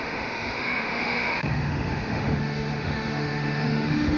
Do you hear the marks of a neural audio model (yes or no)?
yes